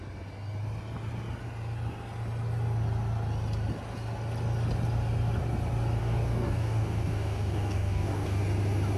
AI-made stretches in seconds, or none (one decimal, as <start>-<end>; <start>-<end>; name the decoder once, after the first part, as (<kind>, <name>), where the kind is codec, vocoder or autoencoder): 6.0-8.4 (codec, DAC)